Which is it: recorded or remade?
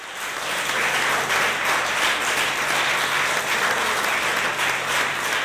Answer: recorded